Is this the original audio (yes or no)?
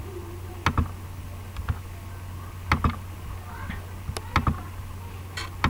yes